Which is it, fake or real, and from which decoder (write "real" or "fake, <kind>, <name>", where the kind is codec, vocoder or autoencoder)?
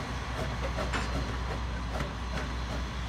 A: real